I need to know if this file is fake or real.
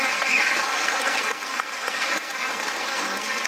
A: fake